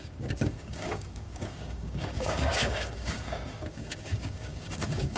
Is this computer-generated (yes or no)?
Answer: yes